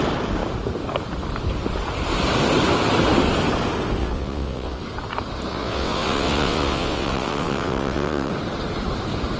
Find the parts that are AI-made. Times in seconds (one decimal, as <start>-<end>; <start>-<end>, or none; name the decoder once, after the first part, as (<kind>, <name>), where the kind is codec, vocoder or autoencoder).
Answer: 4.0-4.8 (vocoder, WaveNeXt); 5.5-8.3